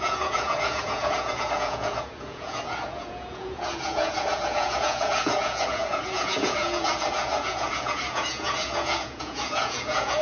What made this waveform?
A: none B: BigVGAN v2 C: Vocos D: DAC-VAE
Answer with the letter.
C